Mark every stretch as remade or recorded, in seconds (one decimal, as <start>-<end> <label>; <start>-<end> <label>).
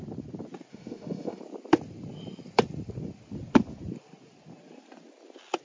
0.0-0.7 recorded; 0.7-1.4 remade; 1.4-5.6 recorded